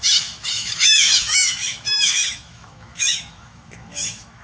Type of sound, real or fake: fake